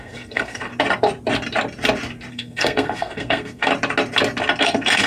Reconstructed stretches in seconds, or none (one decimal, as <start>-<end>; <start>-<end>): 0.0-0.7; 2.3-3.7; 4.6-5.1